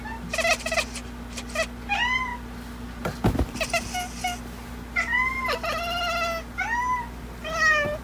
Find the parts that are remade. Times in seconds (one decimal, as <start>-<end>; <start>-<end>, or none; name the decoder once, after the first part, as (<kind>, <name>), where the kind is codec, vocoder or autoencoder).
none